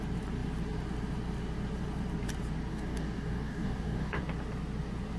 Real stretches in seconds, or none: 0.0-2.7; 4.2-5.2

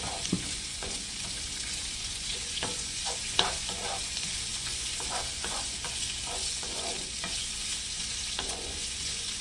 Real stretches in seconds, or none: none

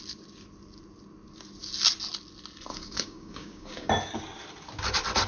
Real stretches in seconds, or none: 0.0-2.7; 3.9-5.3

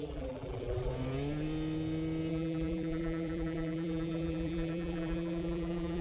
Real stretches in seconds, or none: 0.9-2.3

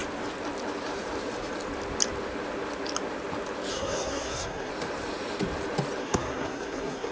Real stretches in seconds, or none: 0.0-3.7; 4.7-6.0

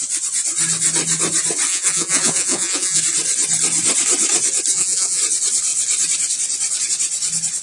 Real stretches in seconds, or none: 0.0-1.7; 3.0-4.7; 5.2-7.6